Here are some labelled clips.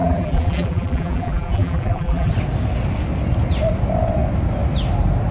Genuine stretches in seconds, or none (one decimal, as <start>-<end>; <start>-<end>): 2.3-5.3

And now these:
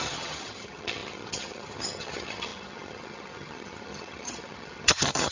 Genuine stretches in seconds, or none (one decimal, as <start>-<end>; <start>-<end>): none

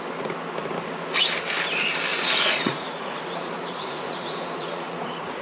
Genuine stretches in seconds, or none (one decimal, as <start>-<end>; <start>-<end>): 0.0-2.1

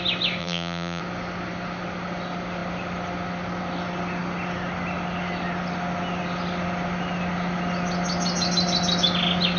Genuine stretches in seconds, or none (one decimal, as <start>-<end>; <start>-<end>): 0.0-0.4; 1.0-9.6

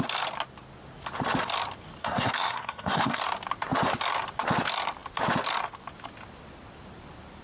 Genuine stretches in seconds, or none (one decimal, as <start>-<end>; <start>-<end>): 0.0-2.0; 3.2-7.4

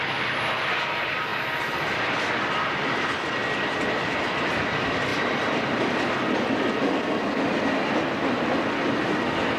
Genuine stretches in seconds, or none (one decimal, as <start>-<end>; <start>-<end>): 0.0-5.1; 6.1-9.6

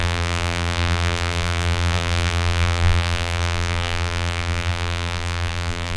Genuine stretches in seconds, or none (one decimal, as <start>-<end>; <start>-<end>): none

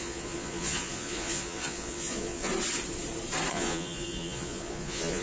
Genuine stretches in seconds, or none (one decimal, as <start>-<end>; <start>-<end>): 2.5-3.5